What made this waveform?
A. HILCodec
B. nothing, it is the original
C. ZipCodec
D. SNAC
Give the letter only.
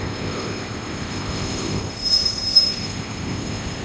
C